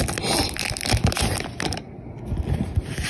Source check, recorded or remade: recorded